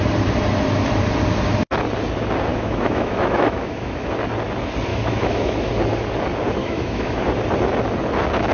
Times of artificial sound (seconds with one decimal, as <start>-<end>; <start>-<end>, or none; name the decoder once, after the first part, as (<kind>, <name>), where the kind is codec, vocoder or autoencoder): 2.5-4.1 (autoencoder, DAC-VAE); 4.9-5.7; 6.6-7.2